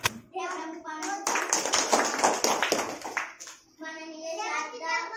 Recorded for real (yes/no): yes